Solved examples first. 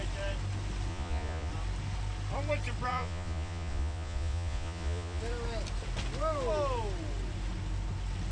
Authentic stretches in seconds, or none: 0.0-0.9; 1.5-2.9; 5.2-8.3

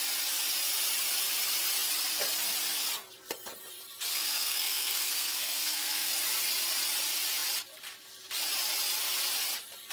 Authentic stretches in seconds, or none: 0.0-4.1; 6.1-9.9

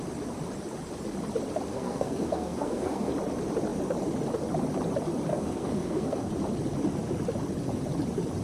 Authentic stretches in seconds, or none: 0.0-1.7; 3.1-5.3; 6.3-8.4

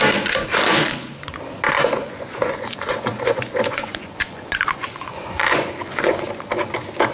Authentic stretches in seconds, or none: 0.0-0.7; 1.4-1.8; 6.1-7.1

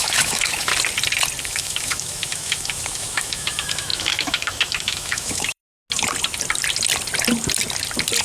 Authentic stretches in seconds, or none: 0.7-1.4; 5.6-8.2

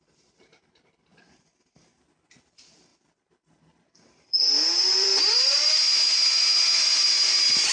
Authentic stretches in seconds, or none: none

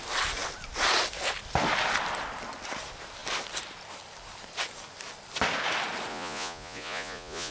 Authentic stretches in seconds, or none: 0.0-6.1